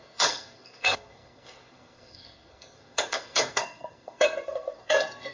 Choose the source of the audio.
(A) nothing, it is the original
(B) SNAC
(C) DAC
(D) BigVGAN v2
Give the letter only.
B